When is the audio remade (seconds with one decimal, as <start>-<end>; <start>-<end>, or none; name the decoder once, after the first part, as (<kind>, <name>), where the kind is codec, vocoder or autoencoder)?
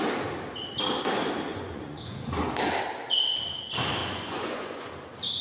1.5-2.2 (vocoder, Vocos); 4.0-4.9